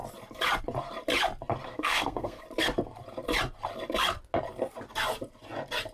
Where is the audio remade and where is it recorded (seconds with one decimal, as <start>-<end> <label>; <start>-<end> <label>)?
0.0-1.7 recorded; 1.7-2.4 remade; 2.4-5.9 recorded